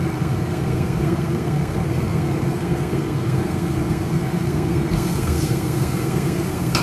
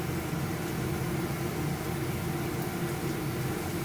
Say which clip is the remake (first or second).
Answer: first